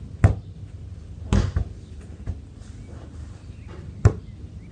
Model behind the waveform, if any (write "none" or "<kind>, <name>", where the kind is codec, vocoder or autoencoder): none